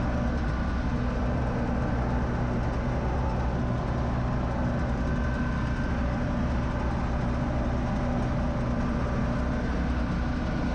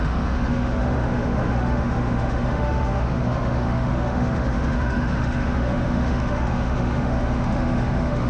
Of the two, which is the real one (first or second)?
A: first